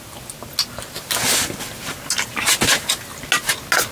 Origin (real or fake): real